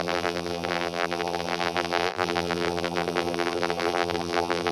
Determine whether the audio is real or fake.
fake